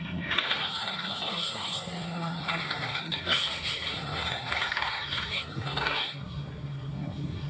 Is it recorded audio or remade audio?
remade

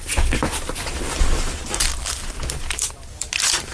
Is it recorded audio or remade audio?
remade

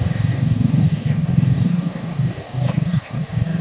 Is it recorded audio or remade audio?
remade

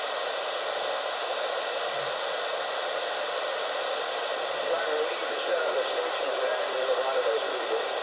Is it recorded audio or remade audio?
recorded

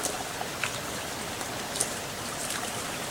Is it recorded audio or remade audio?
recorded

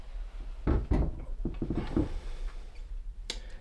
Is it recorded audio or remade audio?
recorded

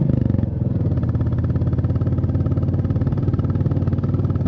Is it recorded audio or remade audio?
recorded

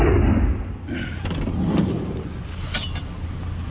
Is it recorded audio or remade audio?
recorded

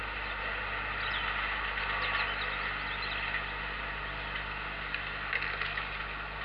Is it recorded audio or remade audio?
recorded